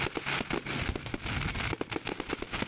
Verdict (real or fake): real